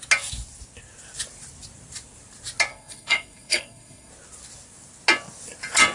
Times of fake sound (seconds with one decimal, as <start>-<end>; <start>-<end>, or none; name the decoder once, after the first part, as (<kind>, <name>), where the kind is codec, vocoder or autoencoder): 2.7-4.1 (codec, SNAC)